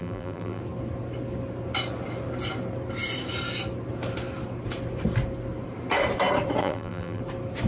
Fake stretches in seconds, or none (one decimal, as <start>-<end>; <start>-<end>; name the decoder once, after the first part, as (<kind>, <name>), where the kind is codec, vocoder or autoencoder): 0.0-0.6 (vocoder, BigVGAN v2); 6.6-7.2